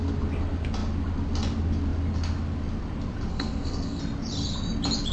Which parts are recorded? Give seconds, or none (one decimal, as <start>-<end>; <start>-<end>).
0.0-3.3; 4.0-5.1

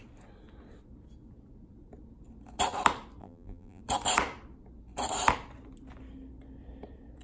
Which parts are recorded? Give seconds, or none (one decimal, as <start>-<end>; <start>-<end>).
0.0-3.2; 3.8-7.2

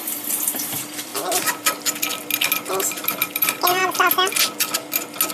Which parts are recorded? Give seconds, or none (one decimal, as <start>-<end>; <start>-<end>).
1.1-2.7; 3.8-5.3

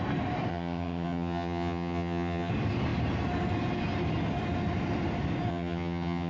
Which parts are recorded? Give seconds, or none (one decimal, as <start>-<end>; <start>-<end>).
0.0-0.5; 2.5-5.5

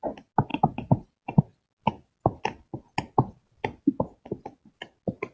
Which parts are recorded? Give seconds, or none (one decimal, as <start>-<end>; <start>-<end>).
0.0-0.5; 1.1-5.3